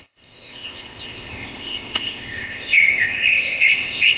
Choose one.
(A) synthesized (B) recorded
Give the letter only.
A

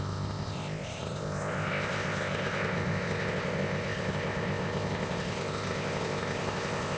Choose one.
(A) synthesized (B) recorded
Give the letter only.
A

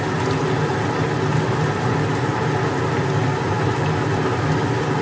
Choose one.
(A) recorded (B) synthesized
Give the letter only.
A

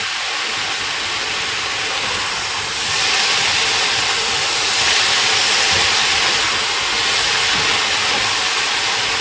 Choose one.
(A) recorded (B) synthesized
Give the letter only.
A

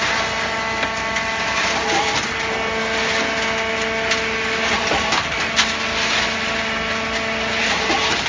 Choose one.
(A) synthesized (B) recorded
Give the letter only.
B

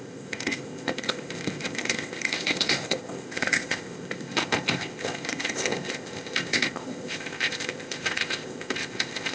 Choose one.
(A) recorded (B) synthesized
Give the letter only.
B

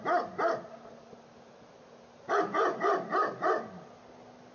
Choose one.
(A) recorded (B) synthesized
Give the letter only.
A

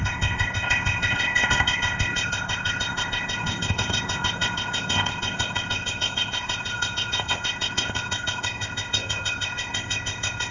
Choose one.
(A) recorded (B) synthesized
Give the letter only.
B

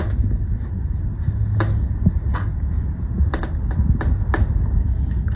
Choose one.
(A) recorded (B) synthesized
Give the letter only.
A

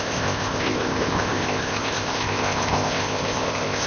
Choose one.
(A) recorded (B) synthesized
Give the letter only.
B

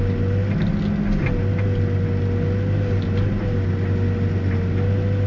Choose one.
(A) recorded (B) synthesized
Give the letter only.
A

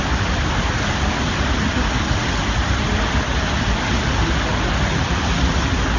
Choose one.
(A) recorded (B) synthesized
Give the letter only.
A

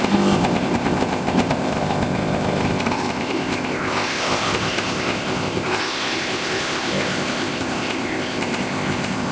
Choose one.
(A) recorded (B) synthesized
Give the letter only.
B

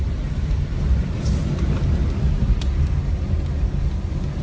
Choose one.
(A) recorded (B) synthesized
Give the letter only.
A